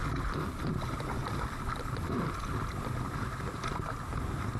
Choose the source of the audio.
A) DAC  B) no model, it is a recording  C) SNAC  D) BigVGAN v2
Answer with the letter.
B